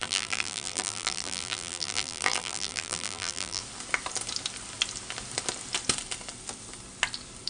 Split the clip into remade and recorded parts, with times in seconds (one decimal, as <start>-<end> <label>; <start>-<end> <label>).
0.0-3.6 remade; 3.6-7.5 recorded